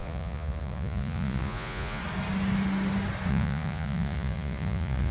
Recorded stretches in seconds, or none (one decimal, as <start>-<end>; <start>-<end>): 2.0-3.3